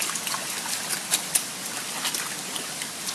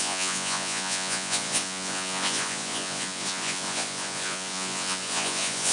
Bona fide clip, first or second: first